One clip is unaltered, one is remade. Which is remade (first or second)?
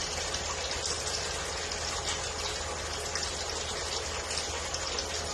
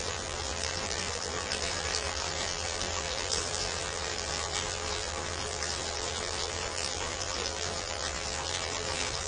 second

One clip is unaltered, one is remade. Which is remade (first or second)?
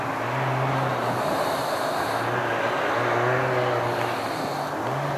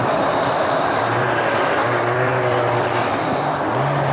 second